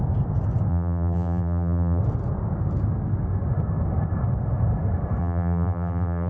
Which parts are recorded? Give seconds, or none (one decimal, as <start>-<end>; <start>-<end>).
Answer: 0.0-0.7; 2.0-5.2